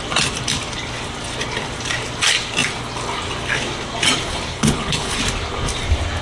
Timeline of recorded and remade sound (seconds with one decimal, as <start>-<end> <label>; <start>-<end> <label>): 0.0-4.5 recorded; 4.5-5.2 remade; 5.2-6.2 recorded